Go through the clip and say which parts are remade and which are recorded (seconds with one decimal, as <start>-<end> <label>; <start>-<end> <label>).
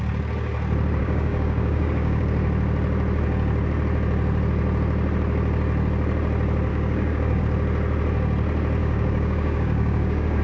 0.0-1.0 recorded; 1.0-2.2 remade; 2.2-6.7 recorded; 6.7-7.4 remade; 7.4-8.8 recorded; 8.8-10.4 remade